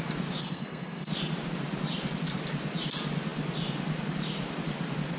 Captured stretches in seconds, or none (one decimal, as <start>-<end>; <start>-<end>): 0.0-0.4; 1.1-5.2